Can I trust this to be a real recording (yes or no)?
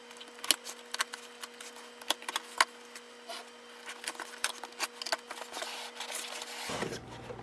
yes